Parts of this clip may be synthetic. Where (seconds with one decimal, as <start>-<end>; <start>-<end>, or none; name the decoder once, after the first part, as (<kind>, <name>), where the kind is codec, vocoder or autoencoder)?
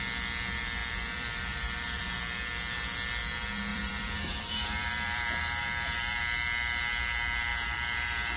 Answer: 0.8-2.0 (vocoder, BigVGAN v2); 3.7-6.2; 7.5-8.4